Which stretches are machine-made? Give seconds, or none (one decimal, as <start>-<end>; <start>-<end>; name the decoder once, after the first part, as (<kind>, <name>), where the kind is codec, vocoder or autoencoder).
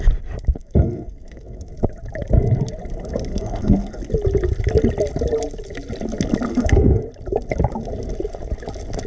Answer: 0.6-1.7 (codec, SNAC); 3.3-4.0; 6.5-7.0